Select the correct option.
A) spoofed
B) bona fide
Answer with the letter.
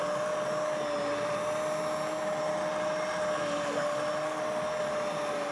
B